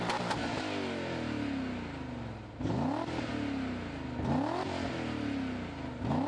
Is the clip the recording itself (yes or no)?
yes